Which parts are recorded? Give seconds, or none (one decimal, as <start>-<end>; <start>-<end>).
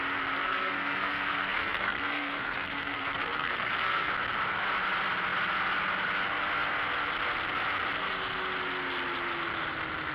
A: 0.0-0.4; 4.1-10.1